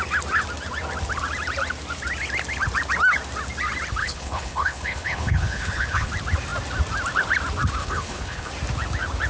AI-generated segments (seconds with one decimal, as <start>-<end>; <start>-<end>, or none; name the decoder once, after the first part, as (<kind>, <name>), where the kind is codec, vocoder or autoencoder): 4.0-6.1 (codec, HILCodec); 7.8-8.5

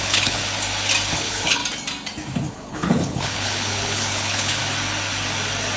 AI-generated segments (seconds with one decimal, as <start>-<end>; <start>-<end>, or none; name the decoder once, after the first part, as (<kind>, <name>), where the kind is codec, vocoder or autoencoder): 0.0-0.4 (codec, HILCodec); 1.1-1.6; 2.5-4.6

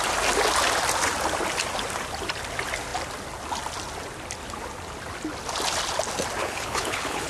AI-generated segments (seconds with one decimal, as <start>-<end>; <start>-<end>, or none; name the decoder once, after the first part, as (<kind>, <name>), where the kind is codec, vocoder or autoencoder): 6.4-7.3 (codec, HILCodec)

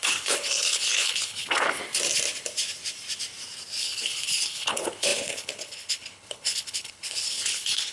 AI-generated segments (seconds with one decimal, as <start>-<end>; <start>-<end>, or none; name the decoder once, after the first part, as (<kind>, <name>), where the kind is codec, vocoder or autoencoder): 0.0-1.8 (codec, HILCodec); 3.8-7.9

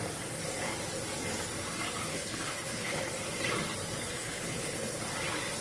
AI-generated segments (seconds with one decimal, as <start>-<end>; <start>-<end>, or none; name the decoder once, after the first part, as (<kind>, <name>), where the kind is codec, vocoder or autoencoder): 2.1-3.1 (codec, HILCodec); 4.1-5.0

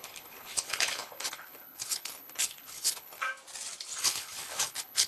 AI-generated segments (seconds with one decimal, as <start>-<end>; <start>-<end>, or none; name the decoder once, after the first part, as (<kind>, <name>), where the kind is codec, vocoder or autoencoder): 0.0-3.2 (codec, HILCodec); 4.0-5.1

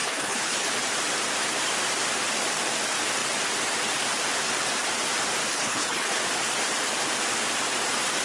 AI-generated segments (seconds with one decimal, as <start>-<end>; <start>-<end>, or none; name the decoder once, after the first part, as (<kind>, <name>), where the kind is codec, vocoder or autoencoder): 0.0-0.7 (codec, HILCodec); 5.5-6.2

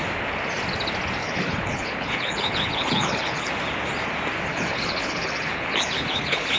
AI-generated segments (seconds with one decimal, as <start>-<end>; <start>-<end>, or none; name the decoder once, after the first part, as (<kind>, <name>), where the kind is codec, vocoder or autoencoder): 1.2-3.5 (codec, HILCodec); 4.5-6.6